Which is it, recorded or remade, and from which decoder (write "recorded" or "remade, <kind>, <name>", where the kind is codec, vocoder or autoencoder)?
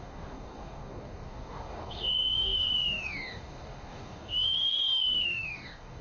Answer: remade, codec, DAC